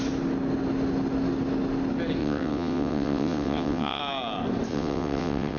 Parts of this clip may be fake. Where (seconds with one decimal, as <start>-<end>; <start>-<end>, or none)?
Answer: 2.2-4.0; 4.7-5.6